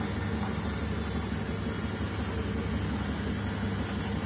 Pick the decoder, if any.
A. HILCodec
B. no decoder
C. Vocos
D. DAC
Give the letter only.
B